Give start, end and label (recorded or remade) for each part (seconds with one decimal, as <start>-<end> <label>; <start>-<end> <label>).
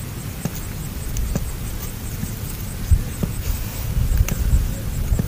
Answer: 0.0-5.3 recorded